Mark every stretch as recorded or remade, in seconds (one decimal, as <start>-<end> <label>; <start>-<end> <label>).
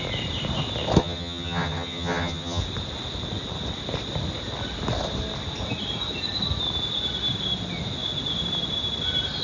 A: 0.0-1.0 recorded; 1.0-2.6 remade; 2.6-9.4 recorded